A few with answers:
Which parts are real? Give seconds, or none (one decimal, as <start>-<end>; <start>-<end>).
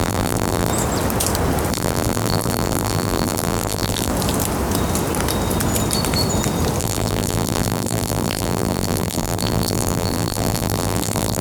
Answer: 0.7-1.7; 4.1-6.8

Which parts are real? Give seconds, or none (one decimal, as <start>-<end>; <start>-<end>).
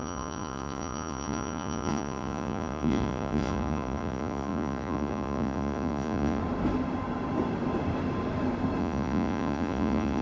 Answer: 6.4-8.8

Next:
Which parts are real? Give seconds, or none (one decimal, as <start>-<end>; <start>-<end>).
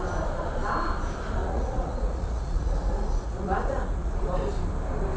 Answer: 0.0-1.4; 4.2-5.2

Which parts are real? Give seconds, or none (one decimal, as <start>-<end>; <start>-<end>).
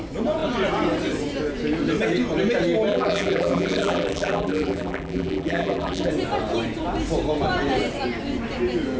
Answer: 0.0-2.9; 6.1-9.0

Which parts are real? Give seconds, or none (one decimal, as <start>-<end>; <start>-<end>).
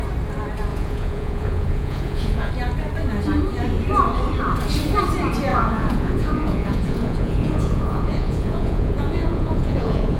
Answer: 0.0-0.7; 2.5-5.5